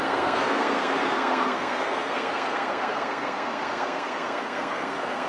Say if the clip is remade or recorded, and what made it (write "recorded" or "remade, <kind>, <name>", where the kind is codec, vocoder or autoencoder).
remade, codec, SNAC